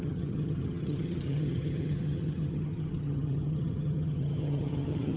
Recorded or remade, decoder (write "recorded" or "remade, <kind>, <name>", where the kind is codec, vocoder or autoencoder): remade, vocoder, HiFi-GAN